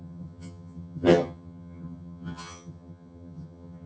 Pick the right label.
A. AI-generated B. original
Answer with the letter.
A